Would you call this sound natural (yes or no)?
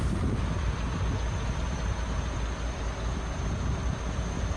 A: yes